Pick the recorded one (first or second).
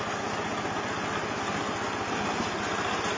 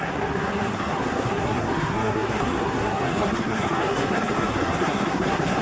first